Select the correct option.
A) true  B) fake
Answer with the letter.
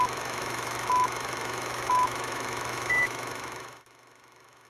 B